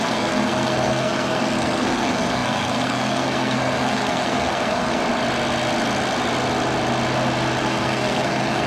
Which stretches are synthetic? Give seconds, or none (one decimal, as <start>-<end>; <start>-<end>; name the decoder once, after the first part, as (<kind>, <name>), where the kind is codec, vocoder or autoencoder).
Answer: 0.0-5.0 (codec, SNAC); 7.6-8.7